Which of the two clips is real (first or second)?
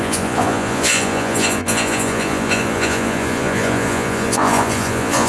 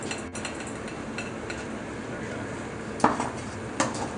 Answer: second